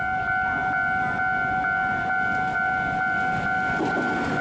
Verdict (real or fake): real